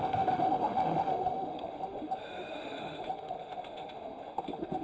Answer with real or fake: fake